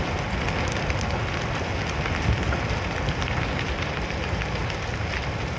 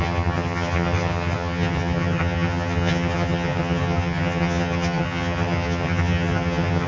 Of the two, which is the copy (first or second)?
second